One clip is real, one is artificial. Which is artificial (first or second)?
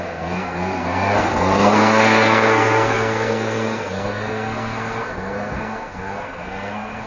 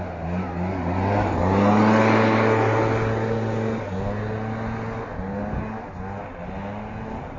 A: first